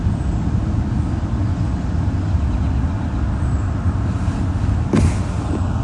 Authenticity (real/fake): real